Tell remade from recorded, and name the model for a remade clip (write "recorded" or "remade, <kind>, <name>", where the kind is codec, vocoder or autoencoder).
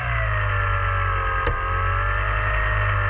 recorded